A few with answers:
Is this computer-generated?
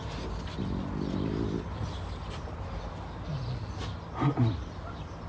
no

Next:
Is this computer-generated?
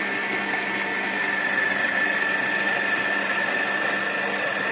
no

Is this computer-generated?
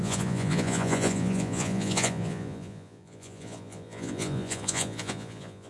yes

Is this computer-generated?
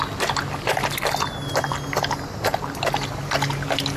no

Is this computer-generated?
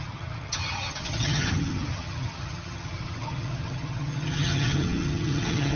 yes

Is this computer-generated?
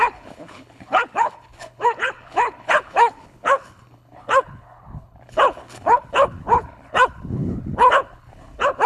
yes